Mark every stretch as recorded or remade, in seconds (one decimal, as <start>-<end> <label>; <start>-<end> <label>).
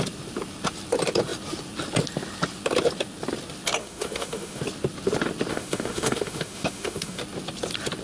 0.0-3.8 recorded; 3.8-4.6 remade; 4.6-5.5 recorded; 5.5-7.2 remade; 7.2-8.0 recorded